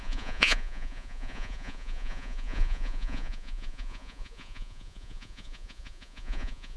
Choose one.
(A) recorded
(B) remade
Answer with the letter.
B